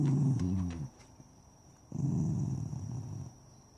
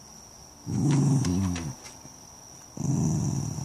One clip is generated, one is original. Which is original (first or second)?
second